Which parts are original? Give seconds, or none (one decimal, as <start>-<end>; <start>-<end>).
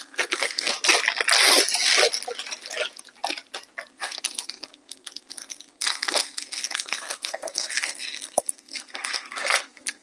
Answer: 0.7-3.9